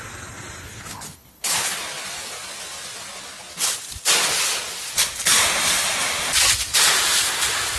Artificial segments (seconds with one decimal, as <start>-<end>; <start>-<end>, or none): 0.6-1.8